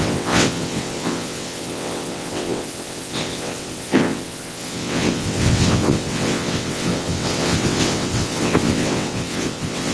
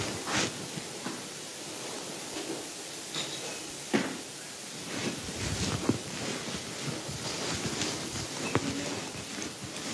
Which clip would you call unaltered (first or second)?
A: second